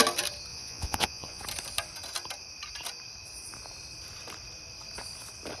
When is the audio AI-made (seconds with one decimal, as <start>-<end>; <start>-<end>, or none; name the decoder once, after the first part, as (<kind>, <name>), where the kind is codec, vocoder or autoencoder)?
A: 0.5-1.4 (vocoder, Vocos)